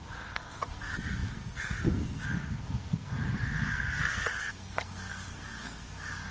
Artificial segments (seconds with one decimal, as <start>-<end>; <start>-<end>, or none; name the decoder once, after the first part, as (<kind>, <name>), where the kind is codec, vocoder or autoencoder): 0.0-6.3 (codec, SNAC)